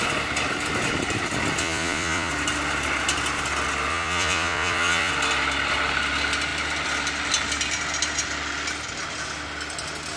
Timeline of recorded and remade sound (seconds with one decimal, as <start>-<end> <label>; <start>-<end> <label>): 0.0-1.6 recorded; 1.6-2.3 remade; 2.3-3.9 recorded; 3.9-5.1 remade; 5.1-10.2 recorded